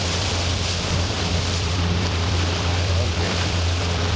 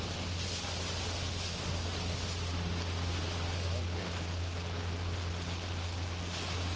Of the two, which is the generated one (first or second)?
first